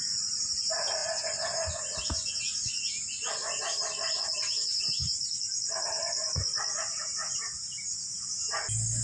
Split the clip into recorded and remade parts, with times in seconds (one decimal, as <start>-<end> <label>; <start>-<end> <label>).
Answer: 0.0-9.0 recorded